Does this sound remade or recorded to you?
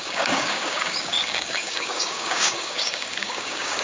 remade